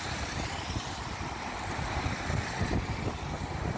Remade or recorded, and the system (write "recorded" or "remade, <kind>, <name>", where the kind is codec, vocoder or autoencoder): recorded